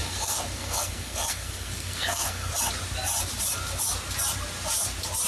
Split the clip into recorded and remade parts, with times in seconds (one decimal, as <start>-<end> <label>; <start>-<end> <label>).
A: 0.0-2.5 remade; 2.5-5.3 recorded